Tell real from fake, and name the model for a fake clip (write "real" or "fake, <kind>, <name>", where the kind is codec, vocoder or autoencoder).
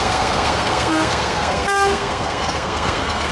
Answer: fake, codec, SNAC